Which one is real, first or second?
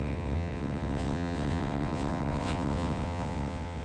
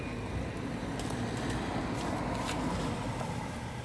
second